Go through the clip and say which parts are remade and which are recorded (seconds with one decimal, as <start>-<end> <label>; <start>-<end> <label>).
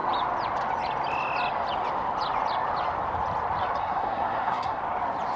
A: 0.0-3.8 recorded; 3.8-4.8 remade; 4.8-5.4 recorded